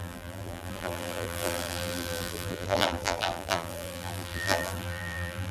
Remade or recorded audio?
remade